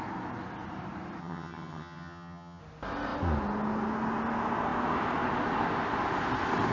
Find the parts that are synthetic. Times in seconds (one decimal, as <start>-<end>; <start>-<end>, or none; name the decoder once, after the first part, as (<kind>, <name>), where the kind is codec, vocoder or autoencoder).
1.2-2.6 (vocoder, HiFi-GAN)